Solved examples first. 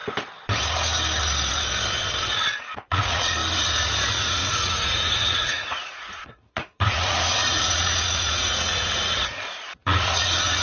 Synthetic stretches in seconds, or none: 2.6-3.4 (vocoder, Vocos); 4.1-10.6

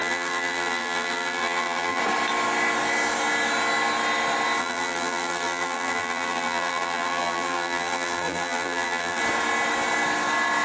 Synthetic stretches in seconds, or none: 0.0-2.0 (vocoder, BigVGAN v2); 4.6-9.2

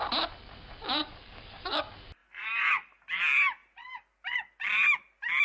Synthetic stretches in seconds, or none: 1.0-1.8 (codec, DAC)

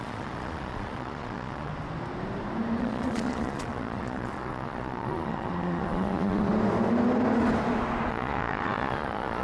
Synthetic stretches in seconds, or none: 0.0-1.7 (vocoder, Vocos); 2.8-6.5; 8.1-9.4

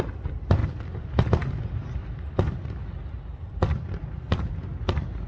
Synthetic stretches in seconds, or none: 0.6-1.1 (vocoder, BigVGAN v2); 2.0-2.8; 3.3-4.5